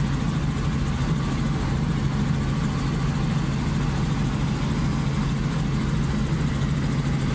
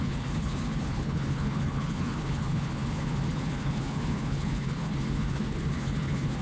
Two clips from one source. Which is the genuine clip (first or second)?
first